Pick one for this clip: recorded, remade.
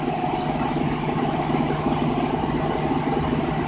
recorded